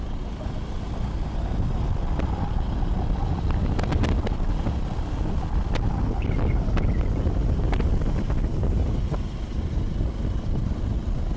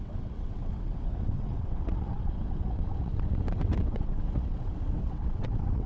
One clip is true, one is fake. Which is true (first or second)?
first